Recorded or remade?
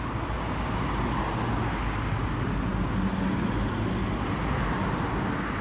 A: recorded